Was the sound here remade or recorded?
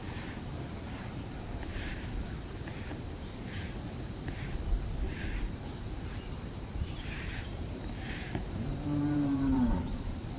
remade